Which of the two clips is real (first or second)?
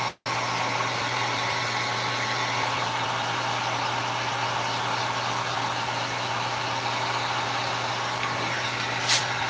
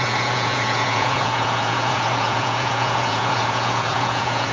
first